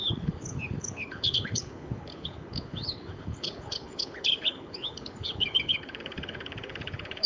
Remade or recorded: remade